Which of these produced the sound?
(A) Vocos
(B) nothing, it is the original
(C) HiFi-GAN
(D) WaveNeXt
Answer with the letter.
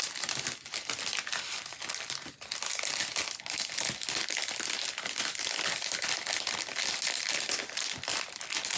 B